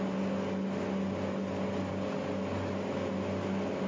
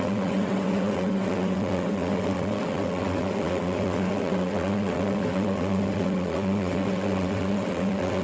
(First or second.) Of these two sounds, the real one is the first